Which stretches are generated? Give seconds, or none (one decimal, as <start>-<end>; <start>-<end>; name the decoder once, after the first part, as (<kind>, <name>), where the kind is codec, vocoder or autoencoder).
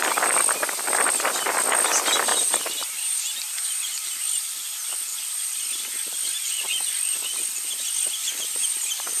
2.3-4.2 (vocoder, BigVGAN v2); 8.2-9.2